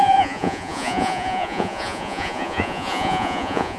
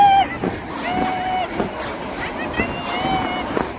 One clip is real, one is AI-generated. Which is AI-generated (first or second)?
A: first